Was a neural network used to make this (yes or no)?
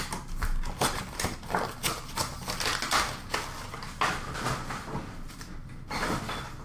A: no